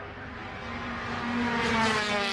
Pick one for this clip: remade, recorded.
recorded